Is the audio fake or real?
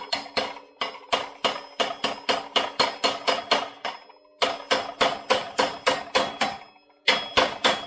real